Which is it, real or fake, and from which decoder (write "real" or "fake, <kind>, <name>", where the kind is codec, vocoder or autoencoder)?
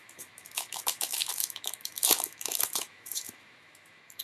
fake, autoencoder, DAC-VAE